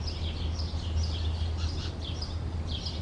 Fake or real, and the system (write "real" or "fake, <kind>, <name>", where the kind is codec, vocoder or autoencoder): real